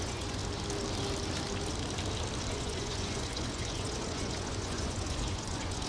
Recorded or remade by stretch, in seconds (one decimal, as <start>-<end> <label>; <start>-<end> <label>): 0.0-0.4 remade; 0.4-2.5 recorded; 2.5-5.9 remade